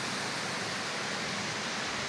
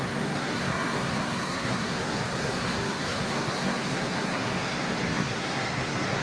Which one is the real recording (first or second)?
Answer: first